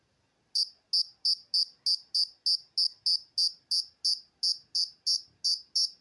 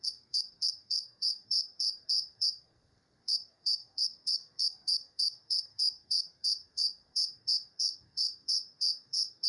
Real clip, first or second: first